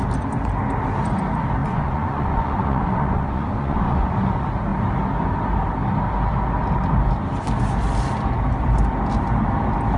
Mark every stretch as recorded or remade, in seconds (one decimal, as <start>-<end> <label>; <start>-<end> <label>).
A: 0.0-1.6 recorded; 1.6-4.1 remade; 4.1-10.0 recorded